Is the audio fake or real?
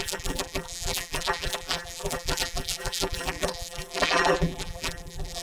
fake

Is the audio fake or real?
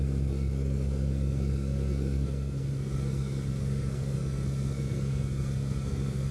fake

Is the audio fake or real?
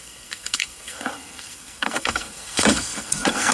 fake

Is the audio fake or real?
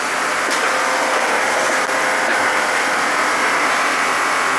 real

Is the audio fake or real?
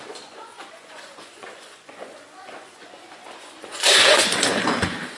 fake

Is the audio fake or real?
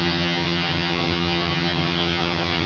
fake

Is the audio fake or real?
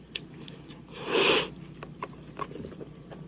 real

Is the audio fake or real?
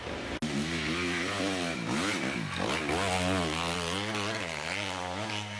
real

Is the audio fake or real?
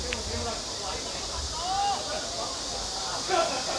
real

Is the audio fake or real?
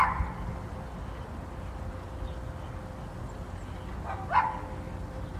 real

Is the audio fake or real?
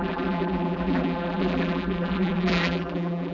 fake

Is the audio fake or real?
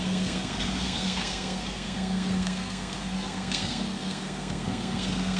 fake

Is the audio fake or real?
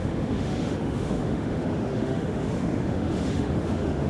fake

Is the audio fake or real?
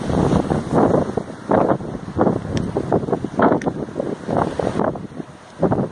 real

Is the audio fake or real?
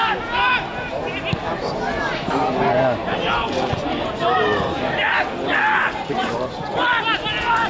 real